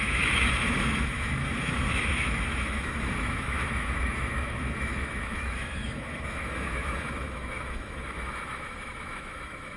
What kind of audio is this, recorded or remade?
remade